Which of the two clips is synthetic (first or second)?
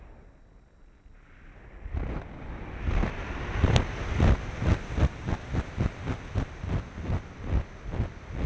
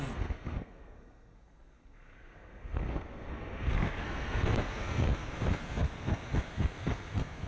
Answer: second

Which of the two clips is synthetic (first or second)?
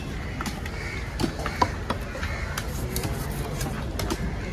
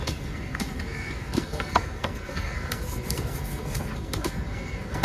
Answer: second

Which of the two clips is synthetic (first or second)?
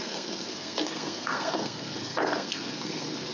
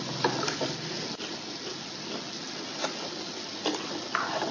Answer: first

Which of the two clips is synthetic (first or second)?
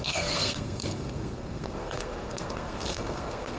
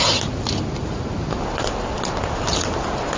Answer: first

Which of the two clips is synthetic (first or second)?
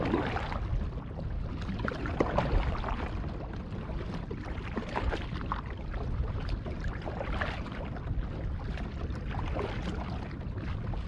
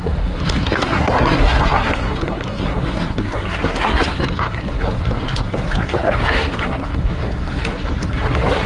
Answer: second